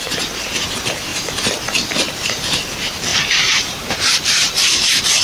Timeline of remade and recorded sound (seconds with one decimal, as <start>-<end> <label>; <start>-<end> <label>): 0.0-5.2 remade